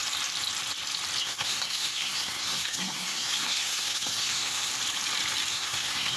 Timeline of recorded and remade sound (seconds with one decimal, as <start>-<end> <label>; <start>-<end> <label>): 0.0-1.2 recorded; 1.2-4.7 remade; 4.7-5.5 recorded; 5.5-6.2 remade